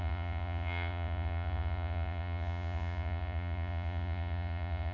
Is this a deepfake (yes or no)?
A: yes